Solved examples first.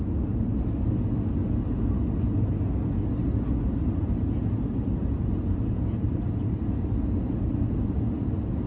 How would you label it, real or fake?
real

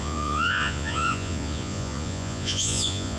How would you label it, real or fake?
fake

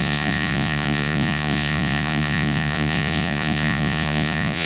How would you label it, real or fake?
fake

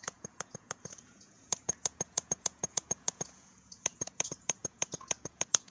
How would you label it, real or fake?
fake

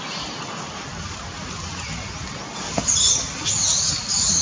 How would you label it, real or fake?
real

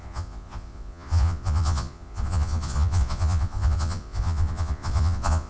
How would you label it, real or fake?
fake